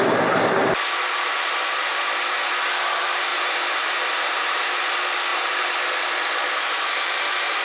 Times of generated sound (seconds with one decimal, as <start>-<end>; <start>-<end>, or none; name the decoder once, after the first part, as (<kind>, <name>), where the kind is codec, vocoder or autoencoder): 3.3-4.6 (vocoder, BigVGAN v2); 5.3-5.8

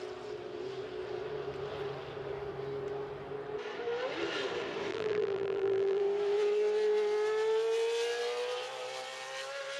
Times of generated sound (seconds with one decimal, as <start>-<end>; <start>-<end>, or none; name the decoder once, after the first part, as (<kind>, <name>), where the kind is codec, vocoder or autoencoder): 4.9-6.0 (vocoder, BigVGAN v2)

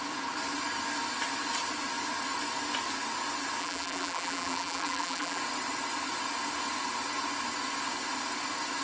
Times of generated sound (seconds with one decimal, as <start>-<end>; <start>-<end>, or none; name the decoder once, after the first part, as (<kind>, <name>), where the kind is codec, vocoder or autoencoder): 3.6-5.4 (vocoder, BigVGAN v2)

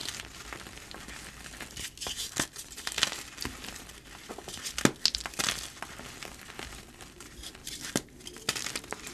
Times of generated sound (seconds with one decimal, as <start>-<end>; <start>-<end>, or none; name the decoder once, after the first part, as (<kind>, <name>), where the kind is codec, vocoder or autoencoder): none